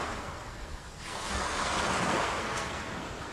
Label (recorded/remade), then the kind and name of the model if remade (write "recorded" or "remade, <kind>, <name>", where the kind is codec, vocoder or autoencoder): remade, codec, SNAC